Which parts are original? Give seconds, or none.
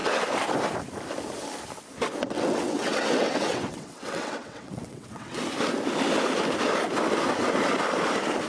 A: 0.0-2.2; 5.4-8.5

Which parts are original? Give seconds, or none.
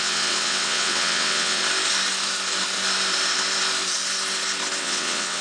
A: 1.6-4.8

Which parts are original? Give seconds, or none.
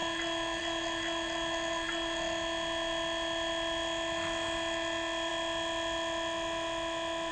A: 0.0-7.3